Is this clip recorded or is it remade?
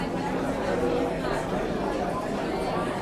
recorded